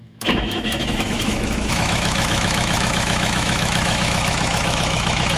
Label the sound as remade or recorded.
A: remade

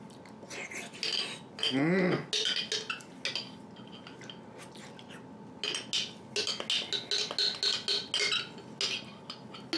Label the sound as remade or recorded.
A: recorded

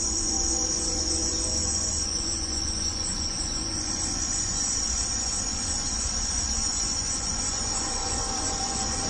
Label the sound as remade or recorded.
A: remade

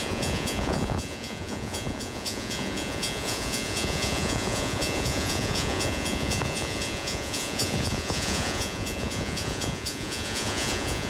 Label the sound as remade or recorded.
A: remade